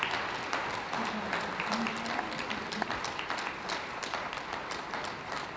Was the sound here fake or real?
real